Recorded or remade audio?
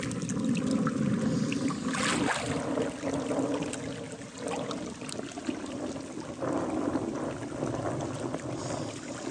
recorded